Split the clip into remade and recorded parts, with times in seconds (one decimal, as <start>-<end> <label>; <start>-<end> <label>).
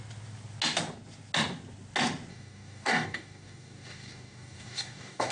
0.0-2.3 recorded; 2.3-5.3 remade